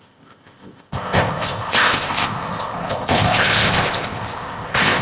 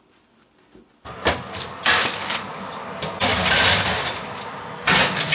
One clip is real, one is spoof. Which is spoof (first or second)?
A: first